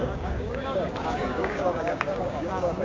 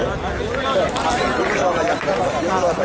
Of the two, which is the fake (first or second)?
first